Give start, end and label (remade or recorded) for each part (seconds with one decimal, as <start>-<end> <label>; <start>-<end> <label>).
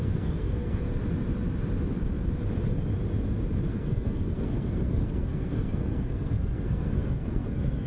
0.0-0.9 remade; 0.9-3.7 recorded; 3.7-7.9 remade